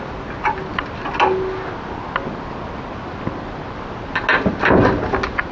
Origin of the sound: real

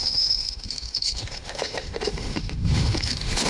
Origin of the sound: fake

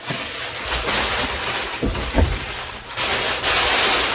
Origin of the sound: real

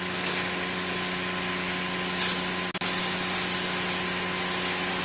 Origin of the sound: real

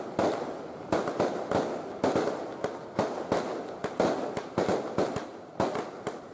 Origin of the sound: real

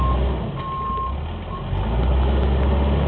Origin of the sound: real